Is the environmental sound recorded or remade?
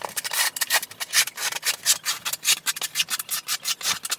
recorded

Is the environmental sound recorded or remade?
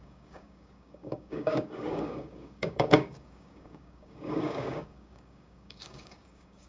remade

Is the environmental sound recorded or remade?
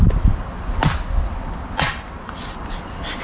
recorded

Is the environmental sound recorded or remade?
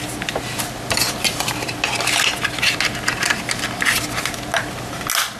recorded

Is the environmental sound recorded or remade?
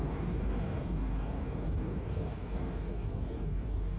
remade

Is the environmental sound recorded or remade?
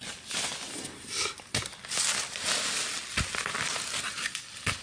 recorded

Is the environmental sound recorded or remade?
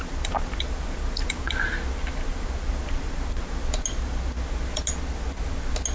recorded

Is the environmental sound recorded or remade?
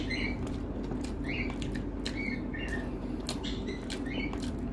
recorded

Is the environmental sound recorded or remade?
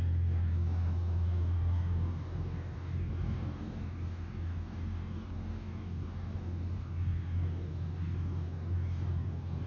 remade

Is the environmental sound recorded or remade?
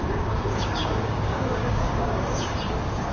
remade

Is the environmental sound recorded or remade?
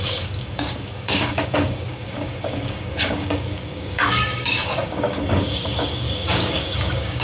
remade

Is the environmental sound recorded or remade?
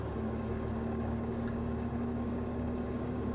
remade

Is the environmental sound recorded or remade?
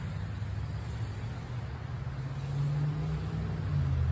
recorded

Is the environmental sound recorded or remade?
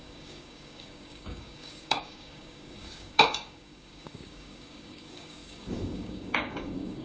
remade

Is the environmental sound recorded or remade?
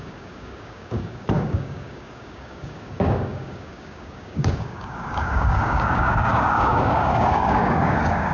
remade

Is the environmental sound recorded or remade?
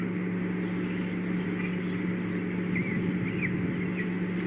recorded